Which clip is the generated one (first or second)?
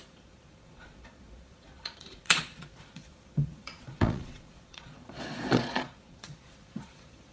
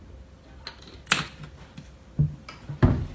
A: first